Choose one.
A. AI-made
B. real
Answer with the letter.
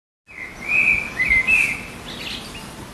B